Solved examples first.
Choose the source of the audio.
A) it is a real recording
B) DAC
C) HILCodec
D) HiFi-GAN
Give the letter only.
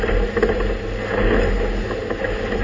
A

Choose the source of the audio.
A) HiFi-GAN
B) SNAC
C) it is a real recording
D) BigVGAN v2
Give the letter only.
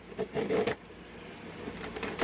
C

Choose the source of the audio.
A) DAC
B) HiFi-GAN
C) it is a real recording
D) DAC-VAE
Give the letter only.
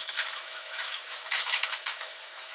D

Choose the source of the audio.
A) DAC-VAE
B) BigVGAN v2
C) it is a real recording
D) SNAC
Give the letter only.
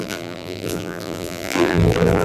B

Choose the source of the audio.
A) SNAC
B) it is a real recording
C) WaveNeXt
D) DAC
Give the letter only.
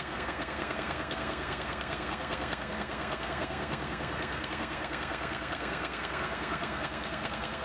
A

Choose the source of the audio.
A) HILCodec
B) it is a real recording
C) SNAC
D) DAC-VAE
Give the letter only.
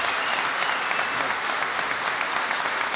B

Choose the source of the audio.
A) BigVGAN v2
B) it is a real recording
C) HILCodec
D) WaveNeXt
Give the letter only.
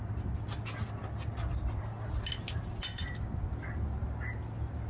B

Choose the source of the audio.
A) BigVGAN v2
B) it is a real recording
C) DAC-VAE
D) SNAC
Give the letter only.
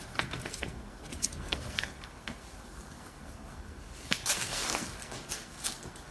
D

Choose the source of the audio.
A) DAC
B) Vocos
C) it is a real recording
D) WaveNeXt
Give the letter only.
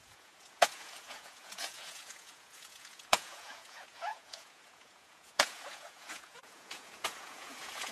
B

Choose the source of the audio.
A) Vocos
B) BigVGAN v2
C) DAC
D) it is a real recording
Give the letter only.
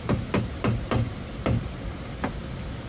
D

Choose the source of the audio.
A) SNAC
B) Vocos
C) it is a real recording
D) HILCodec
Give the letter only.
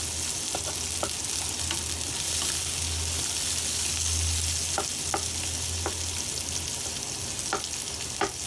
C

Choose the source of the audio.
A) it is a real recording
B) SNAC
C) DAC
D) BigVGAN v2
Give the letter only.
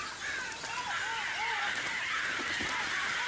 A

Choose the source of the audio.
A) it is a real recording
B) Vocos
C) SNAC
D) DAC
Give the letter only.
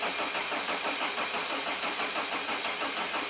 A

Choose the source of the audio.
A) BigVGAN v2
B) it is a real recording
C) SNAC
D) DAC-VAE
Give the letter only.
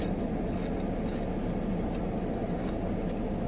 B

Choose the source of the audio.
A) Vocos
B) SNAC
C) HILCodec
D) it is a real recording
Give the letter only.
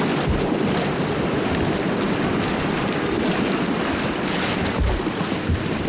D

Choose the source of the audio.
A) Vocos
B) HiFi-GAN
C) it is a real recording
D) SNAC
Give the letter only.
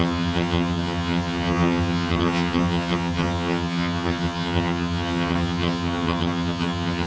B